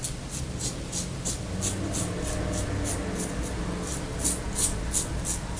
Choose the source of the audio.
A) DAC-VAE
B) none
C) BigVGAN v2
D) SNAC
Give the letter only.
B